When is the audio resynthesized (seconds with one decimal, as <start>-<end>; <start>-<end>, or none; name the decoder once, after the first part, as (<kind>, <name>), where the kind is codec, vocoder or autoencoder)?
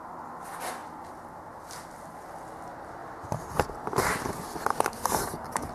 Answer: 4.7-5.7 (codec, DAC)